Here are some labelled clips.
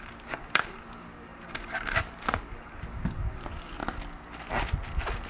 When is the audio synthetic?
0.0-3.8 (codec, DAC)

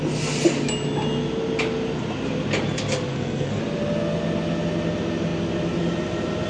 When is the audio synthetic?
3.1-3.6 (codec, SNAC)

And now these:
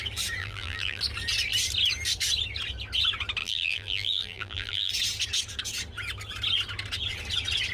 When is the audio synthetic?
0.4-1.0 (vocoder, BigVGAN v2); 3.4-4.9

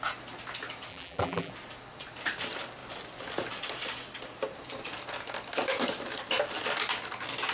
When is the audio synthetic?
0.9-1.5 (vocoder, BigVGAN v2)

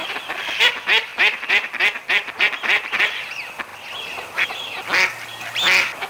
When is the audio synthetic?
0.0-0.7 (vocoder, BigVGAN v2); 1.1-3.0; 3.7-4.5

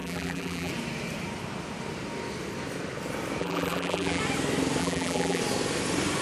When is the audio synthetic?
0.0-0.7 (vocoder, BigVGAN v2); 3.4-4.2; 4.8-5.4

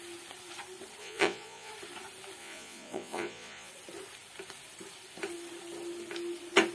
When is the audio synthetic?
1.0-1.7 (vocoder, Vocos); 2.4-3.7

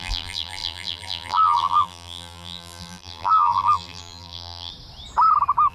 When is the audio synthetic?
0.0-4.7 (vocoder, BigVGAN v2)